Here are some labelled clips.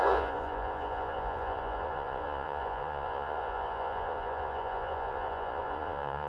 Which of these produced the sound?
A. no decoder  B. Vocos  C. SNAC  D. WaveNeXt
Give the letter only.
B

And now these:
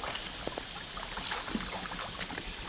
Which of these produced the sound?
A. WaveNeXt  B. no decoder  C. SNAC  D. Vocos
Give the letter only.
B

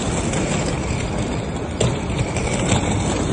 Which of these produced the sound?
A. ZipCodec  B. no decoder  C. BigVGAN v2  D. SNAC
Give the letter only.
B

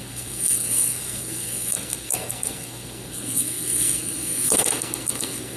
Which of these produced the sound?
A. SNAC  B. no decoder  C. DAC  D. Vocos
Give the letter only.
A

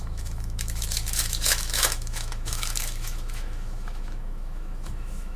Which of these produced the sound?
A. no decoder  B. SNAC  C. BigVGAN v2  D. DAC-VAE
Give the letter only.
D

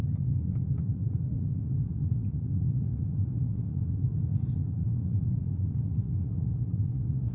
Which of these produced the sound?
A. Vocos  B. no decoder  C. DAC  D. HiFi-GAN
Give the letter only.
A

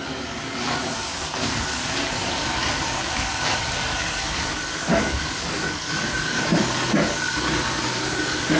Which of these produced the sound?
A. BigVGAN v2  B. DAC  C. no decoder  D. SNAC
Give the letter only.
B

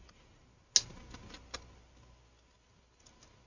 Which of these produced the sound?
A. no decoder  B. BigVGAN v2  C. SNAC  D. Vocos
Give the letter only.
A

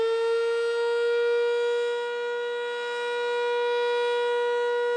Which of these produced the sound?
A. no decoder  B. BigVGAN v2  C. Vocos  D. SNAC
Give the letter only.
A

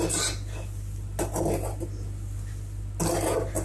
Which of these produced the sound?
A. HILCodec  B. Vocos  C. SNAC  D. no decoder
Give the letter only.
D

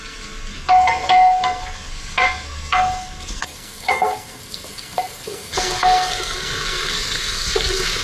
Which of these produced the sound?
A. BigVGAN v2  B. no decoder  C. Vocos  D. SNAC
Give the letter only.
D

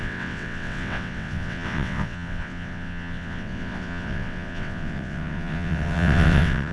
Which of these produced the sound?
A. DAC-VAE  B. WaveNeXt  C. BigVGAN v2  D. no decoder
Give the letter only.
B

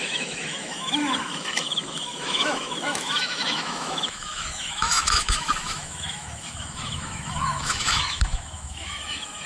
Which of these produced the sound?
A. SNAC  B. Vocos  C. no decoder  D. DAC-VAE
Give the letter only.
D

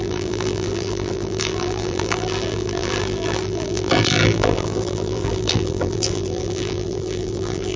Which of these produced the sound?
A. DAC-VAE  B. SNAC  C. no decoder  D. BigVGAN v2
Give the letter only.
D